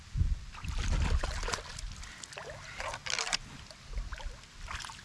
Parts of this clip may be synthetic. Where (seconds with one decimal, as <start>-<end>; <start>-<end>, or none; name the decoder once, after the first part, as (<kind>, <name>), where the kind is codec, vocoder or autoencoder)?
none